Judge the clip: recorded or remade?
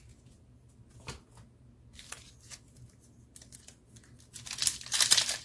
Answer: recorded